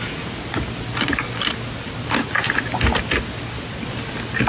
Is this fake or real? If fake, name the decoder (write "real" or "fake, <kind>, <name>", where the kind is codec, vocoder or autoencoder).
real